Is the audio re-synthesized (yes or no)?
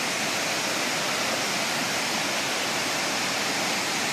no